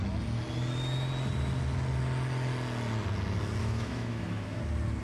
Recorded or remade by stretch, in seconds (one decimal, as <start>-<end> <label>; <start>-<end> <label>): 0.0-3.6 recorded; 3.6-4.6 remade; 4.6-5.0 recorded